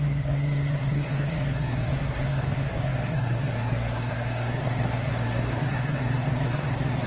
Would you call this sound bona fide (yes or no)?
no